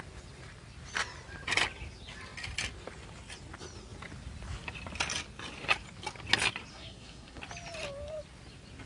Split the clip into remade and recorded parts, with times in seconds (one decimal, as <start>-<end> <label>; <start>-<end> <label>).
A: 0.0-6.7 recorded; 6.7-7.4 remade; 7.4-8.9 recorded